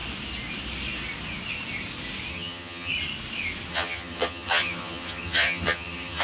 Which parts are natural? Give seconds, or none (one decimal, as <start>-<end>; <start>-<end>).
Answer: 0.0-2.3; 2.9-3.7